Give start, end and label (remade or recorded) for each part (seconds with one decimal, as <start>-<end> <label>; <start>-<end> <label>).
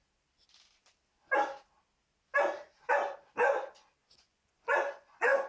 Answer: 0.0-4.0 recorded; 4.0-5.5 remade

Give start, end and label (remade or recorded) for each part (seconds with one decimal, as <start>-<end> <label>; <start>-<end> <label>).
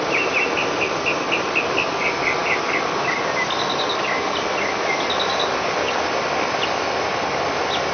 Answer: 0.0-7.9 recorded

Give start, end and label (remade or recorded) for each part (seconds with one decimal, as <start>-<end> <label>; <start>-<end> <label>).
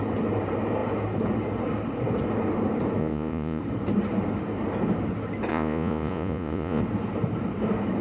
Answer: 0.0-3.0 recorded; 3.0-3.6 remade; 3.6-5.5 recorded; 5.5-6.8 remade; 6.8-8.0 recorded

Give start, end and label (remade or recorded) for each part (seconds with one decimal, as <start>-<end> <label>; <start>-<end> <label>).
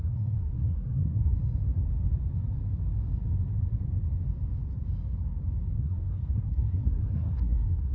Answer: 0.0-1.4 remade; 1.4-5.7 recorded; 5.7-7.9 remade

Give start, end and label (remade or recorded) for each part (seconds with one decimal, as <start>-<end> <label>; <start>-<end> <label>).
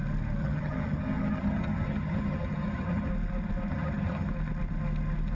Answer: 0.0-0.4 recorded; 0.4-3.1 remade; 3.1-3.7 recorded; 3.7-4.3 remade; 4.3-5.3 recorded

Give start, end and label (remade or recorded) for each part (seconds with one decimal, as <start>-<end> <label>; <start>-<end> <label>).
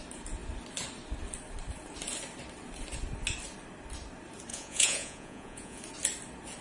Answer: 0.0-4.5 recorded; 4.5-5.8 remade; 5.8-6.6 recorded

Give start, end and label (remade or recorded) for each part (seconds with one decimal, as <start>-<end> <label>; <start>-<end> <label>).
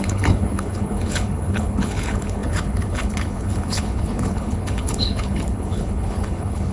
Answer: 0.0-6.7 remade